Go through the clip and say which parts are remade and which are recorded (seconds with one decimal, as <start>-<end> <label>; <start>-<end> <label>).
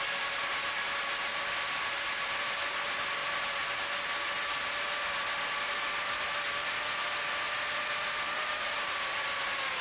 0.0-9.8 recorded